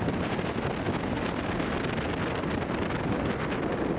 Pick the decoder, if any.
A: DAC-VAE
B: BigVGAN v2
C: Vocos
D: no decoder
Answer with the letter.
D